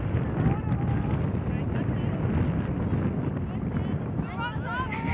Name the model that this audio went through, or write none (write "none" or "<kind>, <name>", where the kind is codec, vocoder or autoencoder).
none